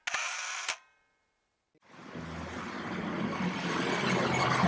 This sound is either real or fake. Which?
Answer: real